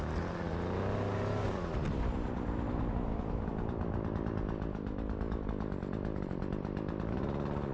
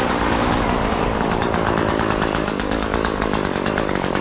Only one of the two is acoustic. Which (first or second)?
first